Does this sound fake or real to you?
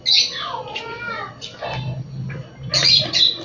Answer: real